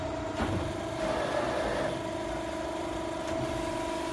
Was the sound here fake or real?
real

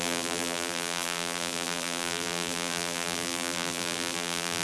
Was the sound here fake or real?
fake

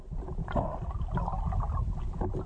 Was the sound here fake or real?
real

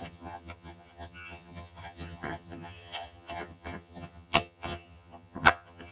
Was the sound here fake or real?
fake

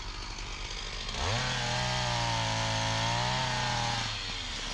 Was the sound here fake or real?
real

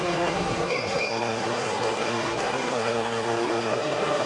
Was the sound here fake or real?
fake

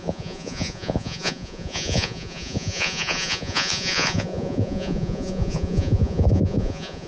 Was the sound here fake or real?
fake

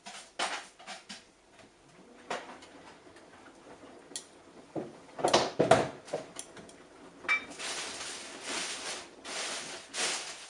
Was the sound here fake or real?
real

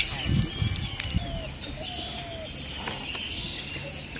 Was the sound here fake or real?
real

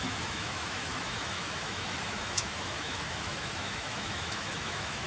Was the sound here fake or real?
fake